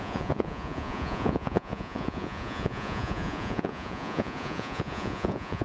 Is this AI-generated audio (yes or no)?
yes